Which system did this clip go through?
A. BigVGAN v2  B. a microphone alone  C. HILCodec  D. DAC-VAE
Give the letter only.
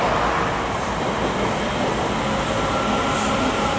B